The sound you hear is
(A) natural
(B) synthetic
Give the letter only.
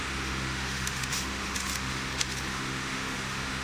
B